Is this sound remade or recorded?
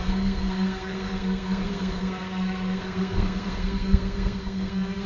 remade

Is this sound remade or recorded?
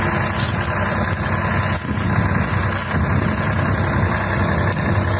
recorded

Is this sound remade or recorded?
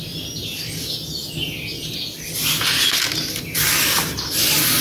recorded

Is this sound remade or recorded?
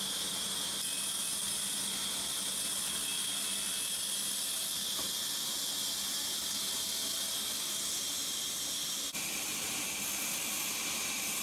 recorded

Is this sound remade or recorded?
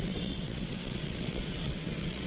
remade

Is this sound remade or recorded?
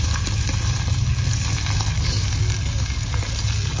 recorded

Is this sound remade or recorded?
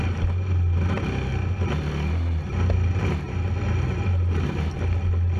recorded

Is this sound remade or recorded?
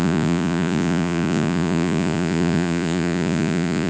remade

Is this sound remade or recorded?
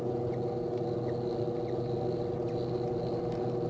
recorded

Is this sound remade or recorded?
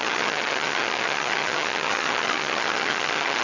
remade